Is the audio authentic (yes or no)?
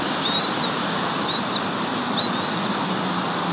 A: yes